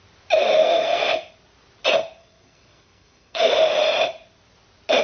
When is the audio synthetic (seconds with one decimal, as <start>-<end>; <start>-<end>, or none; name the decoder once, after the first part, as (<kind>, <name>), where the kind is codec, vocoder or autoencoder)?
0.6-1.3 (codec, SNAC); 2.2-3.5